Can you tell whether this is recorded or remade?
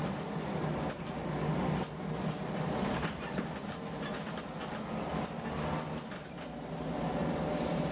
recorded